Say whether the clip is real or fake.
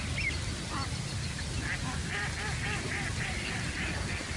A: real